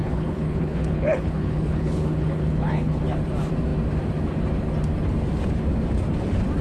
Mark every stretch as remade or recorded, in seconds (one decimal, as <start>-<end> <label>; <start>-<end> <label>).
0.0-3.0 remade; 3.0-6.6 recorded